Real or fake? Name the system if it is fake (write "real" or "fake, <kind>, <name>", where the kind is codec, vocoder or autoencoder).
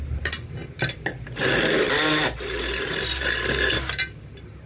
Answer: real